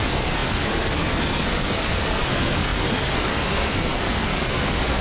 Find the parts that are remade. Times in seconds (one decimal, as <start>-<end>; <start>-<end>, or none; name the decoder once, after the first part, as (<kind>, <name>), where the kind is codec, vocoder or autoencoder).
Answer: 0.0-5.0 (codec, SNAC)